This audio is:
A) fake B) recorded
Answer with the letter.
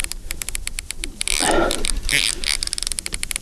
B